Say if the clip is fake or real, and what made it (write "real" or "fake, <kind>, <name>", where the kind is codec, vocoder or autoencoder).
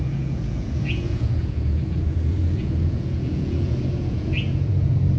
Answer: fake, vocoder, Vocos